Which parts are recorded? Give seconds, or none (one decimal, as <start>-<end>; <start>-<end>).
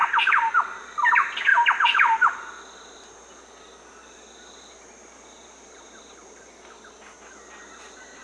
0.0-8.2